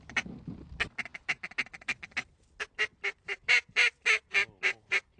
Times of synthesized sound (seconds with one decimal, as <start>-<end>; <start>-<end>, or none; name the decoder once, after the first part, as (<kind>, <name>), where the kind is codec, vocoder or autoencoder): none